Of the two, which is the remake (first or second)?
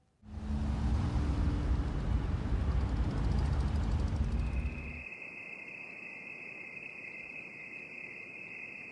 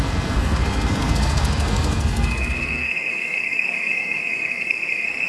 second